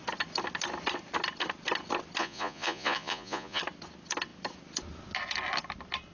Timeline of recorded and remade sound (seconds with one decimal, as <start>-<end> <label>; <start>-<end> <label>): 0.0-2.2 recorded; 2.2-3.6 remade; 3.6-6.1 recorded

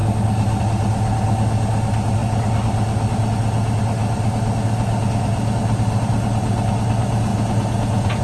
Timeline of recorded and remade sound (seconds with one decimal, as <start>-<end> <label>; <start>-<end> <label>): 0.0-7.3 recorded; 7.3-8.2 remade

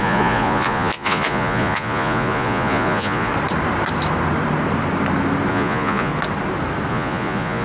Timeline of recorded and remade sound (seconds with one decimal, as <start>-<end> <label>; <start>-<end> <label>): 0.0-3.3 remade; 3.3-5.5 recorded; 5.5-6.1 remade; 6.1-6.9 recorded; 6.9-7.6 remade

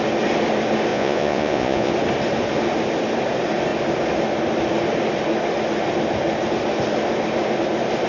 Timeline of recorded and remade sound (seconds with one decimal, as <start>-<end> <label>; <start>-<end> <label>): 0.0-0.9 recorded; 0.9-1.9 remade; 1.9-8.1 recorded

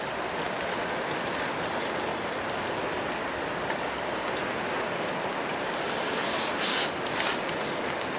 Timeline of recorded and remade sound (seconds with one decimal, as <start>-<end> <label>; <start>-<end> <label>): 0.0-8.2 recorded